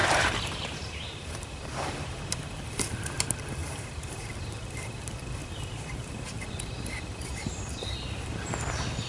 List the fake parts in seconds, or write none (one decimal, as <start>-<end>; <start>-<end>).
0.0-1.9; 3.6-4.2; 5.4-6.1